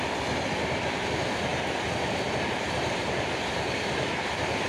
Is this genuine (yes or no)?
yes